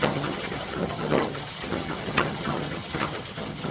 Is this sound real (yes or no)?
no